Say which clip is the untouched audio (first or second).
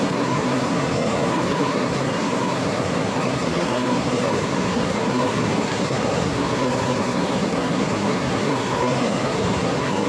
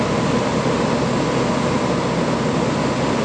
second